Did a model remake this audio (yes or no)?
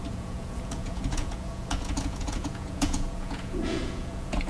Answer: yes